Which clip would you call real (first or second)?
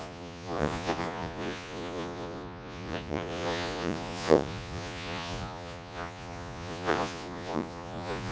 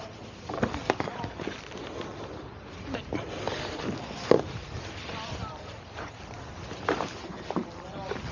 second